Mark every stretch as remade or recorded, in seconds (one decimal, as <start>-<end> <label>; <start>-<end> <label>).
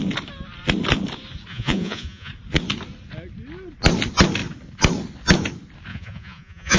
0.0-1.5 recorded; 1.5-2.3 remade; 2.3-5.9 recorded; 5.9-6.8 remade